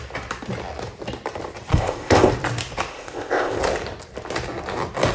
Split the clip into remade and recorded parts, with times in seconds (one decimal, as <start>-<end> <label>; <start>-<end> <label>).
0.0-1.7 recorded; 1.7-2.3 remade; 2.3-2.9 recorded; 2.9-3.6 remade; 3.6-5.1 recorded